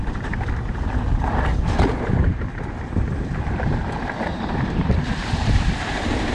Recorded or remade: remade